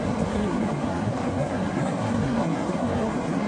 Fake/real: fake